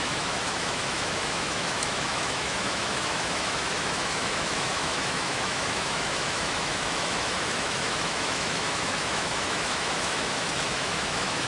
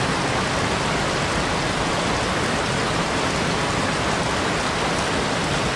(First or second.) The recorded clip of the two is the second